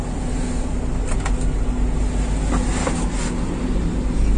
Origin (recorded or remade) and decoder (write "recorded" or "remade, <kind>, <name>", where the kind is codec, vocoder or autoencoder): recorded